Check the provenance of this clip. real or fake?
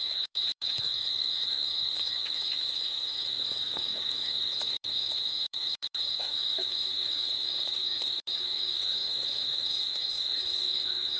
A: fake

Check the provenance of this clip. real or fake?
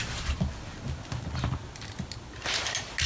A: real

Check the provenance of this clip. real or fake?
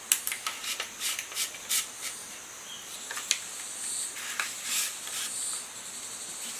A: real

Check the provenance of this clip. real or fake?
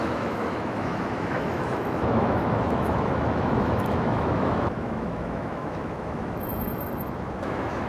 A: fake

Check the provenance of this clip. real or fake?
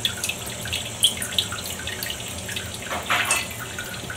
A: real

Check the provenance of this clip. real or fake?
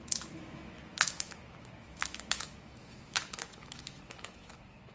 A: fake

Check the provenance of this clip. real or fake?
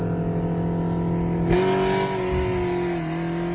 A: real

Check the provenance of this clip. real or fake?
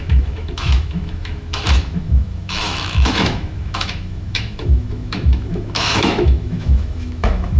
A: fake